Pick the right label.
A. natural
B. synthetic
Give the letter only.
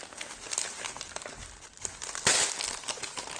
A